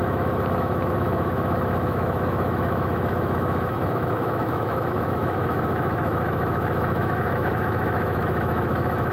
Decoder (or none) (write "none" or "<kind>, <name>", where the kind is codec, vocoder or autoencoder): autoencoder, DAC-VAE